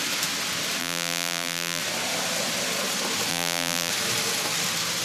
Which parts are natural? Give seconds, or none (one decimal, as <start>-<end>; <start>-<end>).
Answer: 0.0-0.8; 1.8-3.3; 3.9-5.0